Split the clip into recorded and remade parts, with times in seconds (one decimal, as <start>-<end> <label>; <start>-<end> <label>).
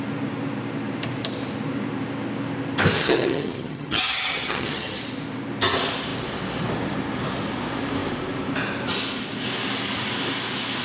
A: 0.0-3.0 recorded; 3.0-5.0 remade; 5.0-10.8 recorded